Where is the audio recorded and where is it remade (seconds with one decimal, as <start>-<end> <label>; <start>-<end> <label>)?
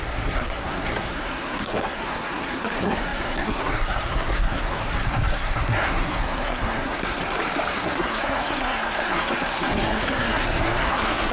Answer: 0.0-7.2 remade; 7.2-7.7 recorded; 7.7-11.3 remade